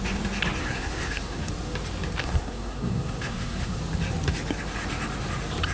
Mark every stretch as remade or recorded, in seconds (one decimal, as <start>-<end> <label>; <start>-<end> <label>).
0.0-0.6 recorded; 0.6-1.5 remade; 1.5-2.2 recorded; 2.2-3.8 remade; 3.8-5.7 recorded